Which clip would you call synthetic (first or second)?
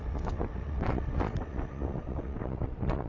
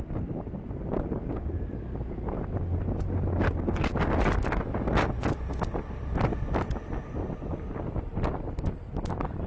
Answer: first